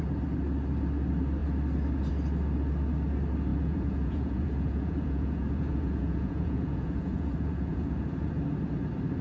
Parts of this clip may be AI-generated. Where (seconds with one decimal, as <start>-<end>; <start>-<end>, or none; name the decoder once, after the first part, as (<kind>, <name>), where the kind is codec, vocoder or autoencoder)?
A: 3.5-8.4 (vocoder, Vocos)